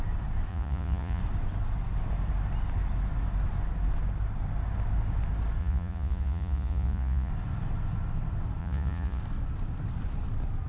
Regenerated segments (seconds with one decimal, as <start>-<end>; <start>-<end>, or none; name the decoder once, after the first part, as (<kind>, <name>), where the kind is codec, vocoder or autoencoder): 0.5-1.2 (vocoder, Vocos); 5.6-7.3; 8.6-9.2